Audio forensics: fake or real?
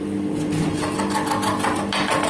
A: real